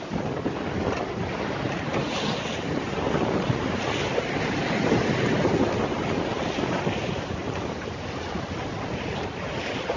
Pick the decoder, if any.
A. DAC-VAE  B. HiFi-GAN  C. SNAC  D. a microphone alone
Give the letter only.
D